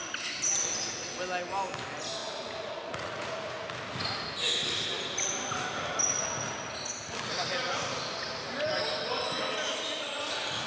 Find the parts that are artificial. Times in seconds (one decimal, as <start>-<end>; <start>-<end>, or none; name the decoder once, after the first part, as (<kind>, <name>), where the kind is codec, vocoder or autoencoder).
2.2-3.7 (vocoder, Vocos)

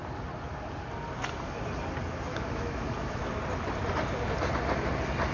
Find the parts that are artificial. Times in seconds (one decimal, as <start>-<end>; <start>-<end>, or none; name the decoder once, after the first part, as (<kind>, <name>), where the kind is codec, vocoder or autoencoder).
2.3-3.3 (autoencoder, DAC-VAE)

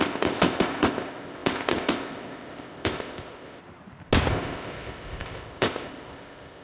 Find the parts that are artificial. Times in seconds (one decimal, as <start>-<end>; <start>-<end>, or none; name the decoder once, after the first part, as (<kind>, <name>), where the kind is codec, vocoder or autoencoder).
0.0-3.6 (codec, ZipCodec); 4.3-6.6

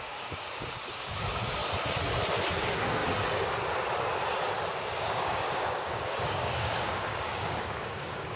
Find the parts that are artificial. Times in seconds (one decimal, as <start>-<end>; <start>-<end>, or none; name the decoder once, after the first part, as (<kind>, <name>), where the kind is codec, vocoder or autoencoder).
0.0-1.6 (codec, DAC); 2.6-3.0; 5.0-8.4